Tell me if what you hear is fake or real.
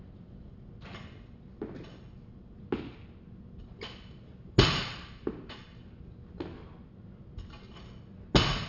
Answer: real